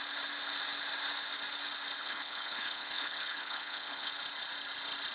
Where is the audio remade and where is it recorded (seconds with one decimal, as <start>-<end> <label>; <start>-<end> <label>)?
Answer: 0.0-2.0 recorded; 2.0-4.1 remade; 4.1-5.1 recorded